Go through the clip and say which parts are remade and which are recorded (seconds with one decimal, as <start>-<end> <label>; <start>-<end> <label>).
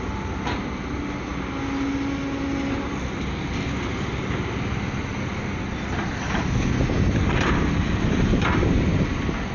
0.0-9.5 recorded